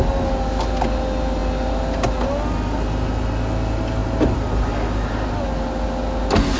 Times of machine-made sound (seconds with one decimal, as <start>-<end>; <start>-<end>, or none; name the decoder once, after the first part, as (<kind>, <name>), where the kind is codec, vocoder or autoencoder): none